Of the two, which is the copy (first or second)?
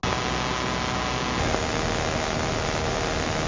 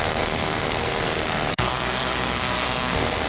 second